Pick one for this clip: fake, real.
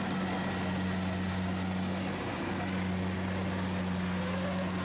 real